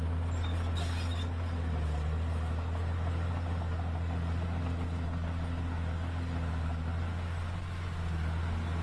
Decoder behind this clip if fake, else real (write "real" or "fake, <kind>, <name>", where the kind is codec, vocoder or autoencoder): real